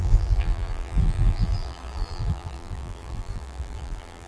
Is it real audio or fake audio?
fake